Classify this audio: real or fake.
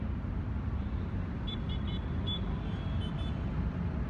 real